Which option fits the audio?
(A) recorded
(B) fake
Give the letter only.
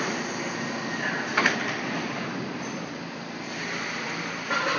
A